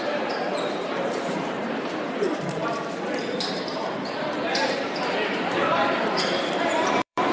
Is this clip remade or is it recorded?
remade